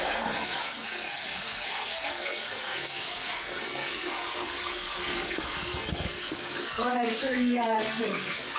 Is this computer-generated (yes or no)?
yes